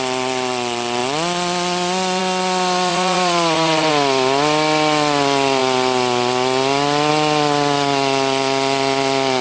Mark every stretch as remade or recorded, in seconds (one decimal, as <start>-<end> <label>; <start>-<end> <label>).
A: 0.0-2.9 recorded; 2.9-3.9 remade; 3.9-9.4 recorded